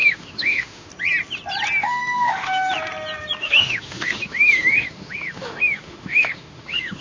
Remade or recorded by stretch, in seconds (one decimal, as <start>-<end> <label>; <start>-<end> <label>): 0.0-0.9 remade; 0.9-1.8 recorded; 1.8-2.7 remade; 2.7-3.4 recorded; 3.4-7.0 remade